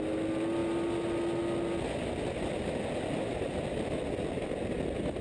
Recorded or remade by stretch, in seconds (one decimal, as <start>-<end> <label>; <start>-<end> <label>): 0.0-5.2 recorded